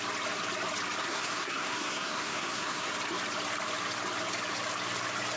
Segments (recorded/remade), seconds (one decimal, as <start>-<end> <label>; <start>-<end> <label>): 0.0-1.0 recorded; 1.0-2.9 remade; 2.9-5.4 recorded

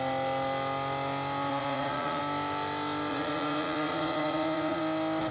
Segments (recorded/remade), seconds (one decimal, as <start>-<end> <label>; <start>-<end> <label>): 0.0-1.5 recorded; 1.5-2.2 remade; 2.2-3.1 recorded; 3.1-4.8 remade; 4.8-5.3 recorded